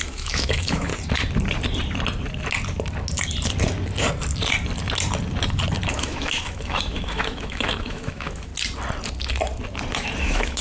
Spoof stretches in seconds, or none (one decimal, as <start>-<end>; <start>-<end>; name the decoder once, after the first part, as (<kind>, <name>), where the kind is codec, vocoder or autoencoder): 0.0-0.9 (autoencoder, DAC-VAE); 5.9-8.5; 10.2-10.6